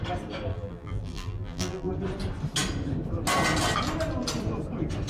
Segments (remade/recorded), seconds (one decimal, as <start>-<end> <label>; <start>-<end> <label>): 0.0-0.5 recorded; 0.5-1.9 remade; 1.9-5.1 recorded